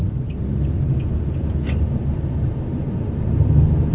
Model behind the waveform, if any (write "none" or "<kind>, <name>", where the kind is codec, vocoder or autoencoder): none